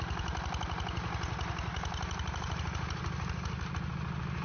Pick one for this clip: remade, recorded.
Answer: recorded